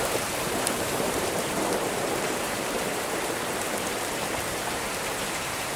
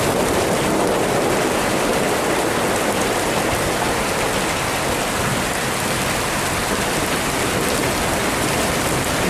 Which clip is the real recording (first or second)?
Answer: second